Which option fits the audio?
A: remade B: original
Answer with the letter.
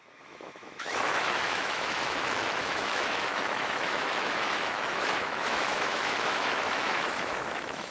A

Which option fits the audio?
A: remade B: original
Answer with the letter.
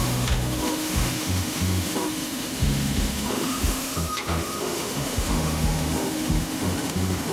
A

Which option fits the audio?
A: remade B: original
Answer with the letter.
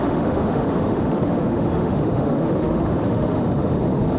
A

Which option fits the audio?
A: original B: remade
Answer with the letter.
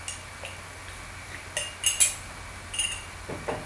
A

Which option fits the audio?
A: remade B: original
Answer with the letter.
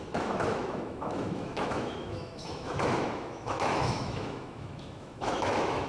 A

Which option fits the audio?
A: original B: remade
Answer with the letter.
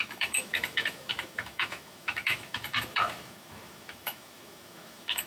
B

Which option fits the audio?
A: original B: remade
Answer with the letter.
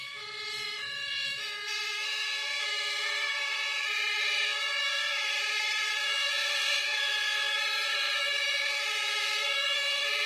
B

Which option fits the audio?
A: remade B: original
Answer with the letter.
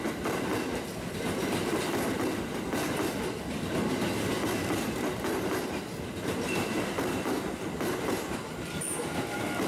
B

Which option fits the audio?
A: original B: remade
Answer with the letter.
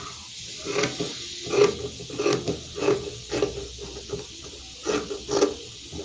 A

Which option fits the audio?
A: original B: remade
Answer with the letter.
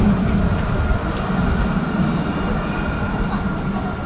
A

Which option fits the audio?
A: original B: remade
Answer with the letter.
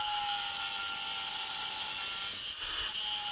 A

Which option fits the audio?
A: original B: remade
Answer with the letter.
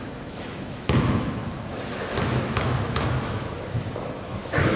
B